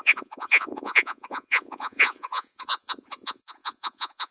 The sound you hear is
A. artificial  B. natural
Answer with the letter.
A